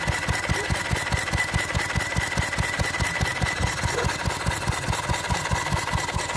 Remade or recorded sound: recorded